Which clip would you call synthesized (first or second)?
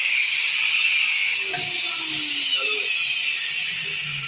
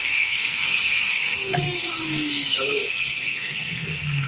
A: second